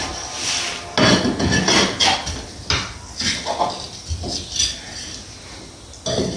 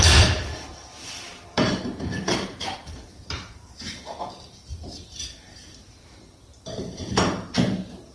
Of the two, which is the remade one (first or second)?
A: second